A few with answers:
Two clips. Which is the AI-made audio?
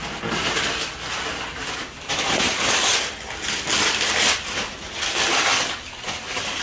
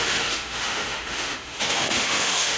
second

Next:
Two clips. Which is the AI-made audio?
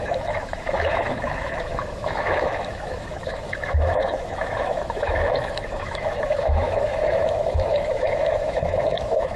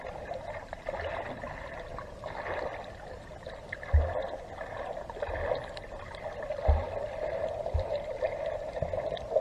first